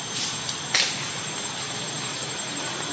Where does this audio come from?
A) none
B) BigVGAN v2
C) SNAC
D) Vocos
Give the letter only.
A